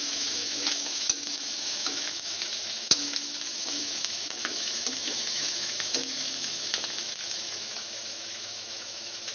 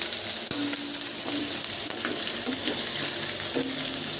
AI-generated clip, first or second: first